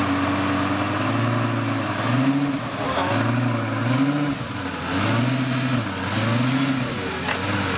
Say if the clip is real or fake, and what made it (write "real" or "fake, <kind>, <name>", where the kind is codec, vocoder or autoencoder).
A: real